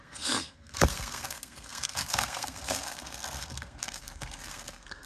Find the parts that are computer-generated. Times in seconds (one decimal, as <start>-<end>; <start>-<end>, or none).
0.0-5.1